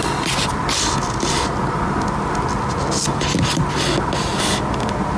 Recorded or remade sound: recorded